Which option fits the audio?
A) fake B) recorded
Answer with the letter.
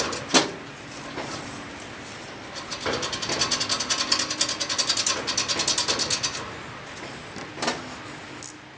B